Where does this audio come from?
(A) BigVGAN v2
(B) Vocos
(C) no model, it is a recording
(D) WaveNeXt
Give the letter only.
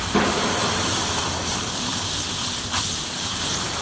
A